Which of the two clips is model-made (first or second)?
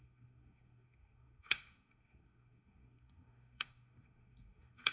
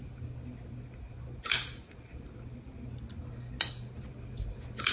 first